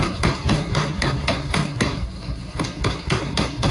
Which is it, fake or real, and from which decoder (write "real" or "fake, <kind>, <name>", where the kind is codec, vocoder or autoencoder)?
fake, codec, SNAC